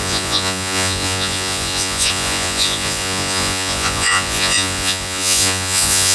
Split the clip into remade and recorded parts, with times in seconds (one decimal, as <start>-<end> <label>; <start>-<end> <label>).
0.0-6.1 remade